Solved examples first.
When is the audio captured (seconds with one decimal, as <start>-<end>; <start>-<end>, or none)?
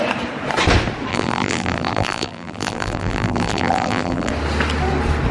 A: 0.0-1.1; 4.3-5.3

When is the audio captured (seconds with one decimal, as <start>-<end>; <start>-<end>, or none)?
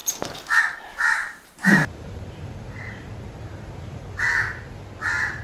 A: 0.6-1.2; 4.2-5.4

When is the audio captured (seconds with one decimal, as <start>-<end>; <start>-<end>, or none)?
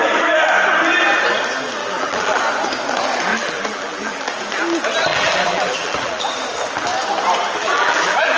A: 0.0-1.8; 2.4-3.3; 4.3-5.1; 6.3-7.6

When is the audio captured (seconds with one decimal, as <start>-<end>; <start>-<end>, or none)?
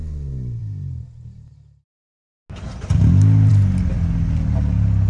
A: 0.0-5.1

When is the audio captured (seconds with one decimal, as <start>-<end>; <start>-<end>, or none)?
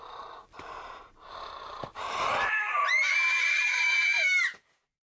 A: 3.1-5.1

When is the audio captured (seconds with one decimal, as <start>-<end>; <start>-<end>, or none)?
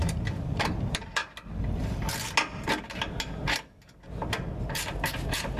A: 1.2-4.6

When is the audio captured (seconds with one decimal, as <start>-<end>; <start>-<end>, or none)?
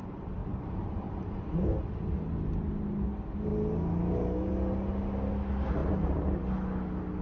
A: 0.0-0.4; 1.7-7.2